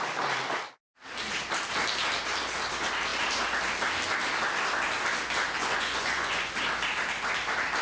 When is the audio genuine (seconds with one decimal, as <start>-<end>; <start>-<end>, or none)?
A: 0.0-5.6; 6.5-7.8